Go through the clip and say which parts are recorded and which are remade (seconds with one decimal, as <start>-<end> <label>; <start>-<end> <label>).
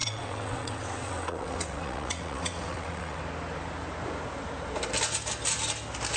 0.0-3.2 remade; 3.2-6.2 recorded